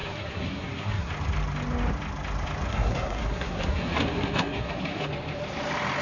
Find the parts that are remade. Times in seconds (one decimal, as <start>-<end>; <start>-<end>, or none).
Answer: 0.0-1.1; 2.7-5.1